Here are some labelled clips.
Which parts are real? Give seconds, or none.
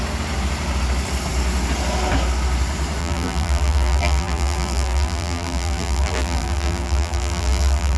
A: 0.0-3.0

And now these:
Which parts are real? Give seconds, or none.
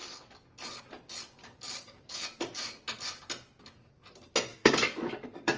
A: 0.0-1.4; 2.1-4.5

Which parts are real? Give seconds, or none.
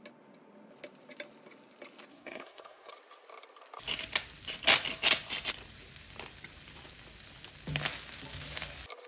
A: 0.0-2.1; 2.9-9.1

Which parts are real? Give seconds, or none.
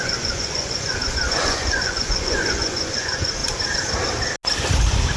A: 3.4-5.2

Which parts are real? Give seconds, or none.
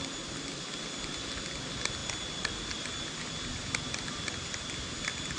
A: 0.0-5.4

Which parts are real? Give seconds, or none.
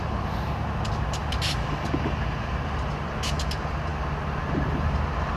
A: 0.0-5.4